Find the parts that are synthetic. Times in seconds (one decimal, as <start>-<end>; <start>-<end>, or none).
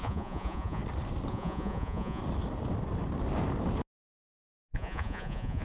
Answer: 0.0-0.8; 1.3-2.2; 4.7-5.6